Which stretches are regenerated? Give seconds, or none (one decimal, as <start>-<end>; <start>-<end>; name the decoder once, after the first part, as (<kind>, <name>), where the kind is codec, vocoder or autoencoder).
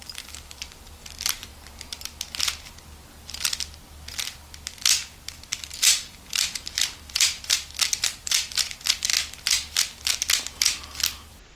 0.0-1.5 (vocoder, BigVGAN v2); 5.3-9.1